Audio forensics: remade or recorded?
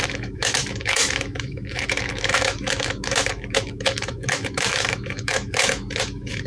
remade